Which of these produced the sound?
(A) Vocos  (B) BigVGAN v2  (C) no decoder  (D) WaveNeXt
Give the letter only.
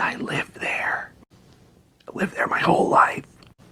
C